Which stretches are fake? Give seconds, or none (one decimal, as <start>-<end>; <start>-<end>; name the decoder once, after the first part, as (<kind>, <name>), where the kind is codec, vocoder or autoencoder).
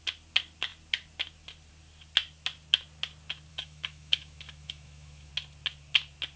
3.5-5.3 (autoencoder, DAC-VAE)